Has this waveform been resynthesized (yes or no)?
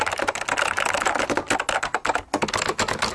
no